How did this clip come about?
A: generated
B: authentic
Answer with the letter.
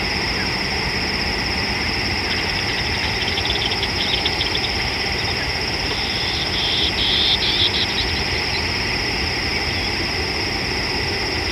A